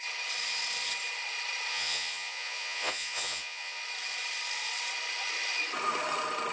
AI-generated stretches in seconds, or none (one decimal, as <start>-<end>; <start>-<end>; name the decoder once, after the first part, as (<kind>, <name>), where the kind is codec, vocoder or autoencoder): 1.7-3.8 (vocoder, Vocos)